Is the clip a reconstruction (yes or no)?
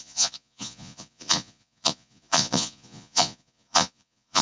yes